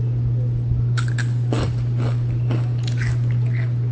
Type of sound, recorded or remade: recorded